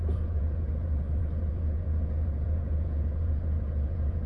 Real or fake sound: fake